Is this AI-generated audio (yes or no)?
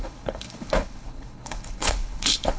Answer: yes